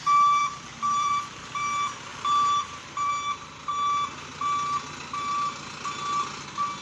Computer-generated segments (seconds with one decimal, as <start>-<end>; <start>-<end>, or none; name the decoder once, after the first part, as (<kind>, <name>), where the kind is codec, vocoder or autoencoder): 0.4-1.6 (vocoder, BigVGAN v2); 2.1-3.1